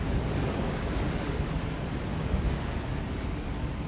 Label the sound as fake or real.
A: fake